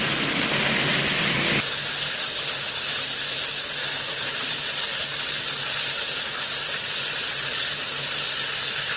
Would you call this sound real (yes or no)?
yes